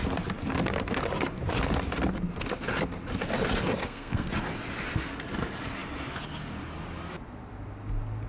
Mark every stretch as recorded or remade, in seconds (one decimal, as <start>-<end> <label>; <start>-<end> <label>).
0.0-3.8 recorded; 3.8-4.3 remade; 4.3-8.3 recorded